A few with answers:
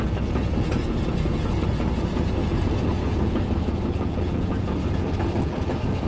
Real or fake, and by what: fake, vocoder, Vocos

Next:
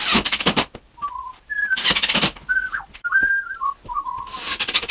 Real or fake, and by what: real